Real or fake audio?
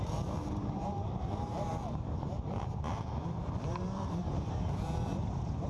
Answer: fake